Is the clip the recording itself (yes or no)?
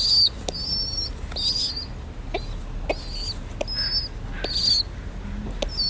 yes